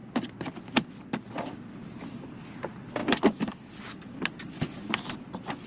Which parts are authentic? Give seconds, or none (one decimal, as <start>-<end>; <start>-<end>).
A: 0.0-3.0; 3.7-5.7